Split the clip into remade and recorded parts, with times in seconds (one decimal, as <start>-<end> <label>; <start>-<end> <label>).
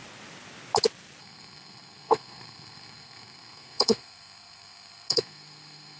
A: 0.0-1.2 recorded; 1.2-6.0 remade